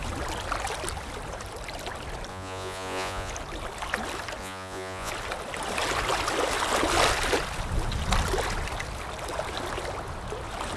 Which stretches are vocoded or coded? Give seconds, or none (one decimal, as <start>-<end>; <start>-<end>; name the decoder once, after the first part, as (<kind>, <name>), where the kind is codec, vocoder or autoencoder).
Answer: 2.3-3.3 (vocoder, Vocos); 4.4-5.1